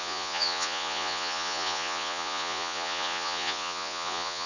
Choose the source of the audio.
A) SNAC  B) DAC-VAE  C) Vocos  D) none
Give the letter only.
C